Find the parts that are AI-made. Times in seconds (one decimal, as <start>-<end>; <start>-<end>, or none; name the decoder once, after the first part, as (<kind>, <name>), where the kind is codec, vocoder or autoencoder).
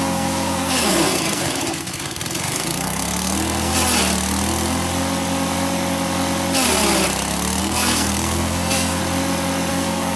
0.0-3.7 (codec, SNAC); 7.6-9.0; 9.7-10.2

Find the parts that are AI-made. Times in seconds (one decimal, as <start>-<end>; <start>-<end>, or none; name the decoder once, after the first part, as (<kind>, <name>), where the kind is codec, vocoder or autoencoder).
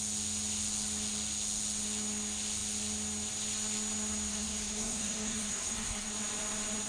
4.3-6.1 (codec, SNAC)